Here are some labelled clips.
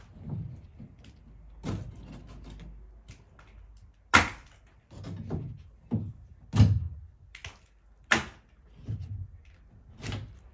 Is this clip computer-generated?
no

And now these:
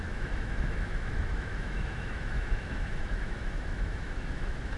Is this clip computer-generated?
yes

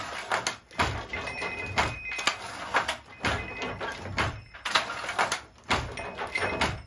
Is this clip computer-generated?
no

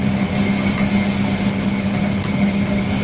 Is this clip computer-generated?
no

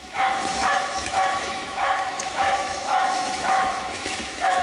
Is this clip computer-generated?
yes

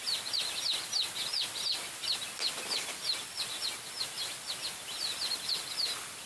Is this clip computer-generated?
no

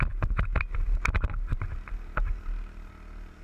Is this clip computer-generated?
no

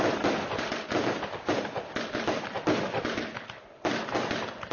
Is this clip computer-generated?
no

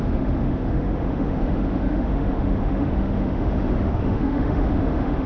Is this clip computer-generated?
yes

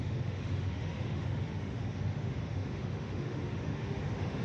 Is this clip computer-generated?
yes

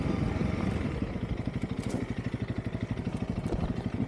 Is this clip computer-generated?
no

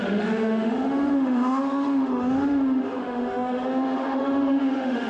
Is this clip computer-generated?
yes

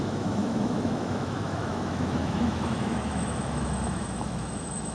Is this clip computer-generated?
yes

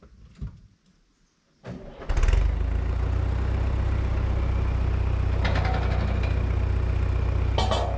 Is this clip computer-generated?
no